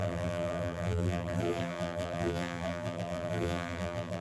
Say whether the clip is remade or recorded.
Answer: remade